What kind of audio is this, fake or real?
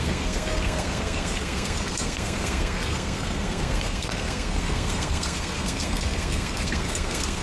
fake